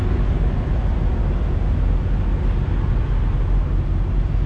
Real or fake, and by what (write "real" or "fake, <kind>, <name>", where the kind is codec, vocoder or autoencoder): real